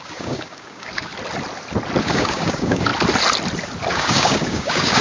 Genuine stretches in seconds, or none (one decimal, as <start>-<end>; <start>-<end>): 1.1-2.0; 2.9-3.9